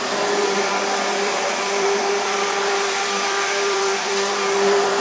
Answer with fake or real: fake